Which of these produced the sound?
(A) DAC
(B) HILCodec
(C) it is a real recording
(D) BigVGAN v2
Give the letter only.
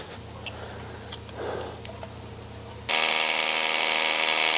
C